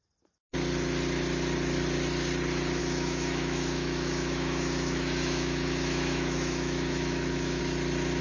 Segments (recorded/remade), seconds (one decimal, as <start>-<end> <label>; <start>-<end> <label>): 0.0-2.8 recorded; 2.8-7.6 remade; 7.6-8.2 recorded